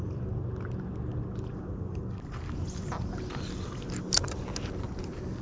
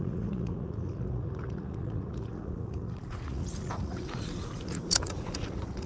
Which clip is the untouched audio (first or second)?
first